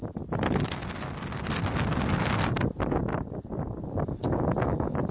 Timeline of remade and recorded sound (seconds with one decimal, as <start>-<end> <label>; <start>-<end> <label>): 0.0-5.1 recorded